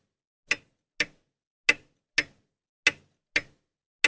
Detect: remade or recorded recorded